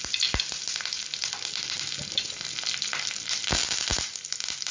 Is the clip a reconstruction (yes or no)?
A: no